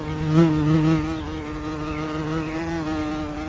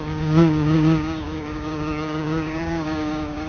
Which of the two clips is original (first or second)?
first